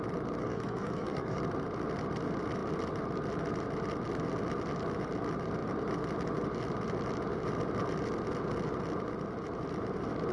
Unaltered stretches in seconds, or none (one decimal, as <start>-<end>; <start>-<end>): 0.0-0.4; 1.4-10.3